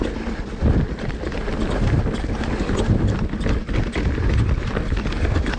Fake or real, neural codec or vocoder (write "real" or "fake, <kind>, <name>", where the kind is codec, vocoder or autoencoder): real